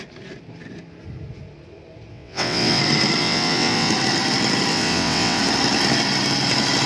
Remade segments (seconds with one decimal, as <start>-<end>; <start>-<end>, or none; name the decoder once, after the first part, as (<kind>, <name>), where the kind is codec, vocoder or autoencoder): 2.1-2.8 (vocoder, WaveNeXt); 3.2-3.9; 4.7-5.4